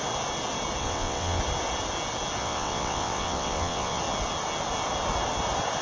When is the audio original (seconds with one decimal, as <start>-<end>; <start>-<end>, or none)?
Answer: 0.0-0.8; 1.4-2.4; 4.0-5.8